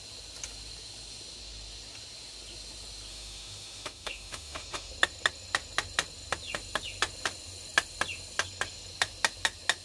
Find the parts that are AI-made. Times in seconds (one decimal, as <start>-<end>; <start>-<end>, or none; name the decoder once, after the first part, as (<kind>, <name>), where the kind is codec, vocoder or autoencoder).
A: 3.1-4.9 (autoencoder, DAC-VAE)